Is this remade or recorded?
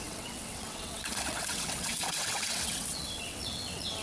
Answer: remade